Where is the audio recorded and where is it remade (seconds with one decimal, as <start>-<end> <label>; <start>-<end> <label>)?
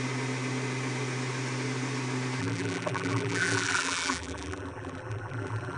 0.0-2.4 recorded; 2.4-5.8 remade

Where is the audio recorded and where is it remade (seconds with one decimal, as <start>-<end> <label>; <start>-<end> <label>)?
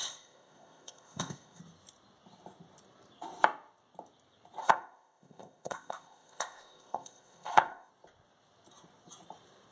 0.0-1.6 remade; 1.6-4.6 recorded; 4.6-7.9 remade; 7.9-9.7 recorded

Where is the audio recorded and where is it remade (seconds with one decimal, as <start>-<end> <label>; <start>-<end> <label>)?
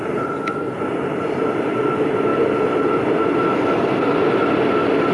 0.0-5.1 recorded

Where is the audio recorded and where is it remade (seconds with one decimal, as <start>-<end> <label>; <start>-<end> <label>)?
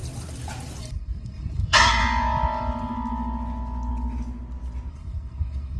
0.0-0.8 recorded; 0.8-2.0 remade; 2.0-4.9 recorded; 4.9-5.8 remade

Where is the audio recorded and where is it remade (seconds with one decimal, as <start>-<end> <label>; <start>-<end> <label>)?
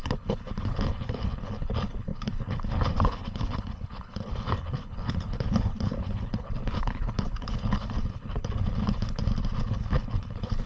0.0-9.2 remade; 9.2-9.7 recorded; 9.7-10.7 remade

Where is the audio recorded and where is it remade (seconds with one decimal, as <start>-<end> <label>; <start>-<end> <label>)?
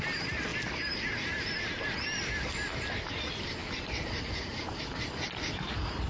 0.0-6.1 recorded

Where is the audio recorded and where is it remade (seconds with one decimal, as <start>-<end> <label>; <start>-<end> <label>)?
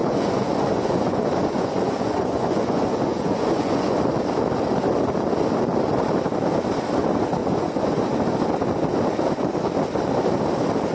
0.0-4.0 remade; 4.0-7.4 recorded; 7.4-8.1 remade; 8.1-10.9 recorded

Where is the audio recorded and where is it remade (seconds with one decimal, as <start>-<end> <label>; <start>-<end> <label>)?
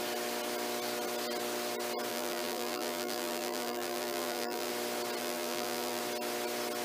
0.0-2.1 recorded; 2.1-4.7 remade; 4.7-5.2 recorded; 5.2-6.0 remade; 6.0-6.8 recorded